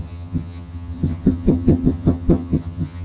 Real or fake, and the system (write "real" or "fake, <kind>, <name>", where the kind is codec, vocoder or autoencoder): fake, vocoder, HiFi-GAN